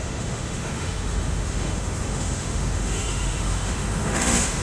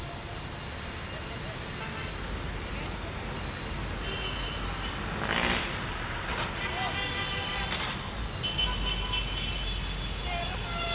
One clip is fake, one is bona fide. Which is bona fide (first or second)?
second